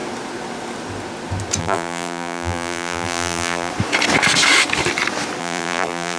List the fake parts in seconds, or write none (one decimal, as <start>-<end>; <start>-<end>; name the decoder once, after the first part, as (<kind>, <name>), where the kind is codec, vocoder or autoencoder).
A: 1.6-3.7 (vocoder, BigVGAN v2); 5.4-6.2